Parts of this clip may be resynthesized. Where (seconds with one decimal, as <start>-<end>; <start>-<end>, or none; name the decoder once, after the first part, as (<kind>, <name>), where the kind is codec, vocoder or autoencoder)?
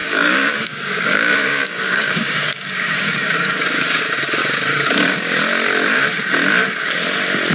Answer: 0.0-4.0 (codec, DAC); 4.4-5.4